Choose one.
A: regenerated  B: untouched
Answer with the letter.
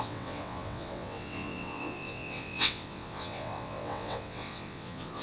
A